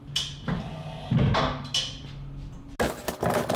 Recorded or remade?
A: recorded